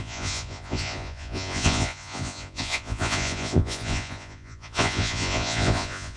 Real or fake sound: fake